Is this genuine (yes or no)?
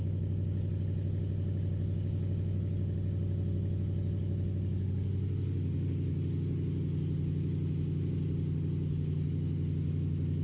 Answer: yes